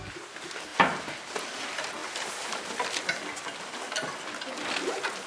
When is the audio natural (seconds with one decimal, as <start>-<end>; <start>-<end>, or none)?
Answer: 0.0-5.3